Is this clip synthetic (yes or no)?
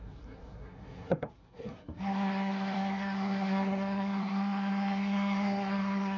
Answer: yes